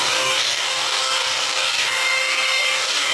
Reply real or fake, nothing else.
fake